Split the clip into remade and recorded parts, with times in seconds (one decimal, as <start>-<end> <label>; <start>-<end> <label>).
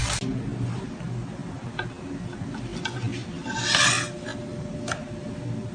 0.0-5.7 recorded